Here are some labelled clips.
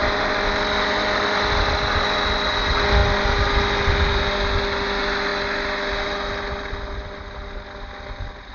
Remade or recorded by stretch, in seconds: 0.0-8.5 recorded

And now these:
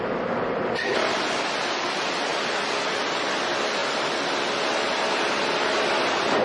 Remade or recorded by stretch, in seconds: 0.0-2.3 recorded; 2.3-3.4 remade; 3.4-6.4 recorded

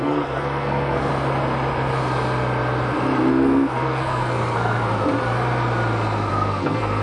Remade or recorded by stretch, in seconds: 0.0-1.1 remade; 1.1-3.3 recorded; 3.3-4.8 remade; 4.8-6.3 recorded; 6.3-7.0 remade

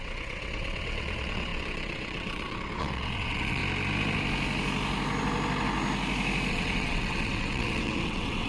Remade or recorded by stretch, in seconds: 0.0-3.6 remade; 3.6-6.5 recorded; 6.5-8.5 remade

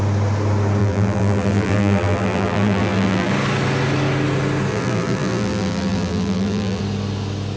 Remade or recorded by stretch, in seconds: 0.0-0.8 recorded; 0.8-3.3 remade; 3.3-4.7 recorded; 4.7-6.8 remade; 6.8-7.6 recorded